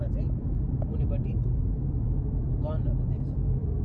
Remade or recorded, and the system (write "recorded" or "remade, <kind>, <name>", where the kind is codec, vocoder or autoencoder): remade, vocoder, BigVGAN v2